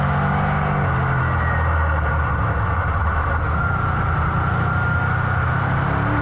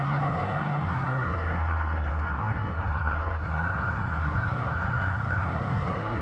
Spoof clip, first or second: second